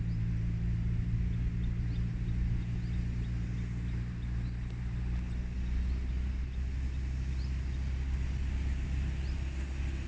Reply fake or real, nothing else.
real